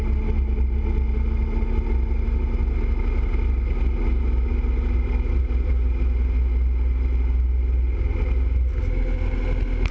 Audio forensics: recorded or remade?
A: recorded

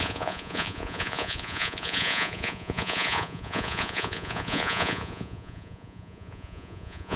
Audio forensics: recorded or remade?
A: remade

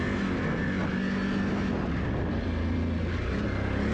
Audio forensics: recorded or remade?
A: recorded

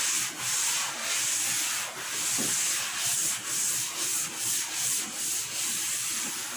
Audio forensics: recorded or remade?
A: recorded